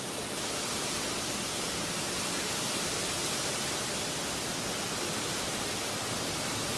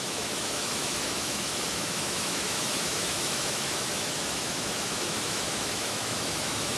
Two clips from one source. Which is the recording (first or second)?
first